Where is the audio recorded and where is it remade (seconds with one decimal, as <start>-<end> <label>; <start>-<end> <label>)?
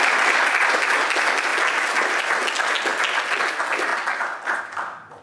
0.0-5.2 recorded